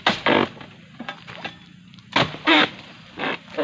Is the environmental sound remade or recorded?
recorded